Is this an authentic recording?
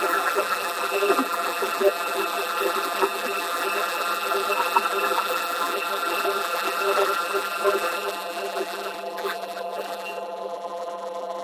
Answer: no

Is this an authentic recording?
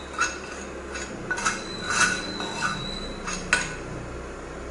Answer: yes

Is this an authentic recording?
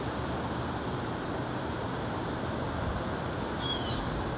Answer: yes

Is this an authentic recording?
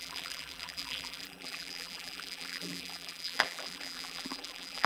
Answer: no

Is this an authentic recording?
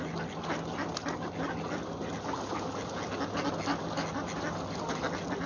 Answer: yes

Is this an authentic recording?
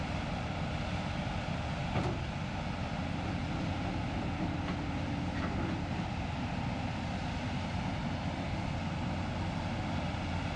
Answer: yes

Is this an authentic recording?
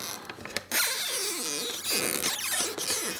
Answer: yes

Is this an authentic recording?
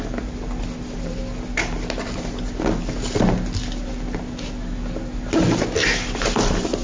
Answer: yes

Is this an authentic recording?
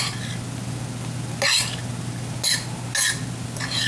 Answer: yes